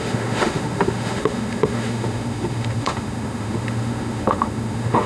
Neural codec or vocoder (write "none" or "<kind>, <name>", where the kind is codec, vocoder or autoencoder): autoencoder, DAC-VAE